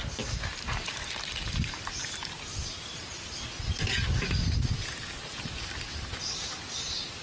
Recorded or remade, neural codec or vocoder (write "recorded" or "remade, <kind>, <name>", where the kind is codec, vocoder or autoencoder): recorded